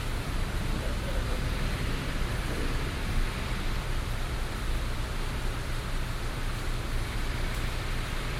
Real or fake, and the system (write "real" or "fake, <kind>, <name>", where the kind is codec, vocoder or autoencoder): fake, vocoder, BigVGAN v2